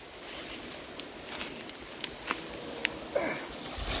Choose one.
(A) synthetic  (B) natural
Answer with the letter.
B